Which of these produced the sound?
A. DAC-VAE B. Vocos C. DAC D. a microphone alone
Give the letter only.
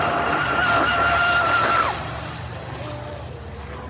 D